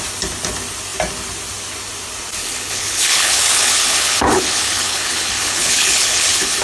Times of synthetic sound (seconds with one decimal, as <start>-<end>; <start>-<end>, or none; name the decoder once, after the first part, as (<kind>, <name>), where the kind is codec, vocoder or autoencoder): 2.4-6.6 (codec, HILCodec)